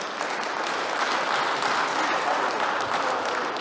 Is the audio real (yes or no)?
yes